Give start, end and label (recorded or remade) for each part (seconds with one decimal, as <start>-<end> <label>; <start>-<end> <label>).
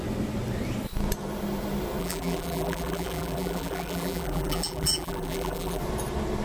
0.0-2.0 recorded; 2.0-5.8 remade; 5.8-6.4 recorded